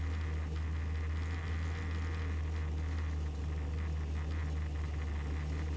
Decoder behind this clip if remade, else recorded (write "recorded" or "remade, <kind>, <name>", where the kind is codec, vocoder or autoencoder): recorded